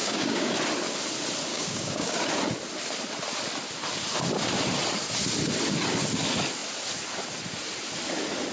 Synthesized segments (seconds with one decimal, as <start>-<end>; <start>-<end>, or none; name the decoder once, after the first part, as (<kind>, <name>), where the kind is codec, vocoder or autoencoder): 0.0-0.5 (codec, DAC); 1.5-2.2